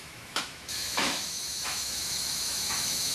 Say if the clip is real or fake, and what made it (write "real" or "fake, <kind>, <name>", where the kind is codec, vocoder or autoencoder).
fake, autoencoder, DAC-VAE